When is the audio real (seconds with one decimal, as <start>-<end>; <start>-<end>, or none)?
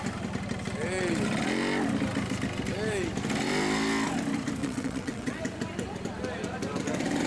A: 0.0-4.6; 5.4-7.3